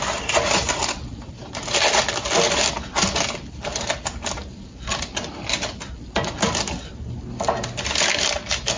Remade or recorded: recorded